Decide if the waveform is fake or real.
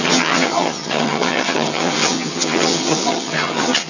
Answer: fake